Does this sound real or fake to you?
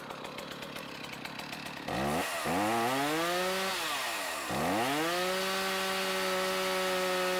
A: real